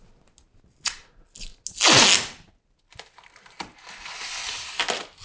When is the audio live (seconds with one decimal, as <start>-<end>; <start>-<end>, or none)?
0.0-5.2